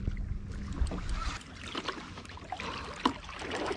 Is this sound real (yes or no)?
yes